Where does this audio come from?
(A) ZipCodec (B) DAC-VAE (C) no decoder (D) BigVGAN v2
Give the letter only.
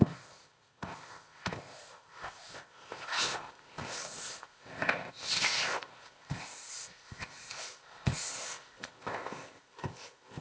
A